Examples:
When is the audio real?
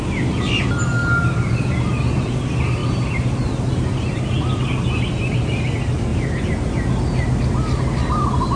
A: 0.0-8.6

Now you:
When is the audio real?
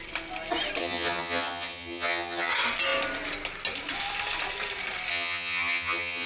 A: 0.0-0.8; 2.5-5.1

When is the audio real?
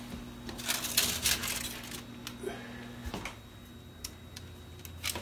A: 0.0-5.2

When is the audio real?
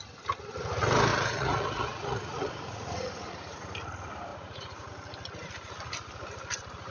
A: 0.0-1.1; 3.6-4.3; 4.9-6.9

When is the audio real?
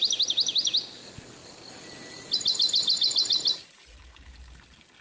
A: 0.0-5.0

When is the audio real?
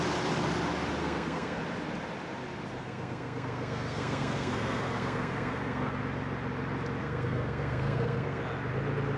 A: 0.0-1.0; 1.6-2.8; 6.0-7.0; 8.4-9.2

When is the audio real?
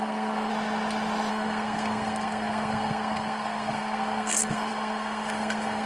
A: 0.5-1.3